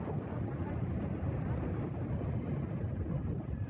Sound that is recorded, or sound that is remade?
recorded